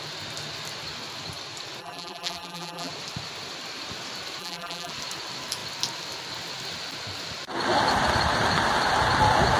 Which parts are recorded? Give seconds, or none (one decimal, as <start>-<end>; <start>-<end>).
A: 0.0-1.8; 2.9-4.4; 4.9-9.6